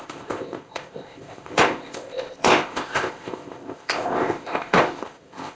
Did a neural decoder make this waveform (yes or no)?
yes